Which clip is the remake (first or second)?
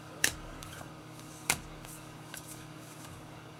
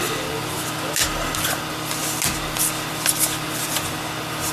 first